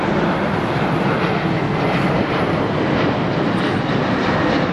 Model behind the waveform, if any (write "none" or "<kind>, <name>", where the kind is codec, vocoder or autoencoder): none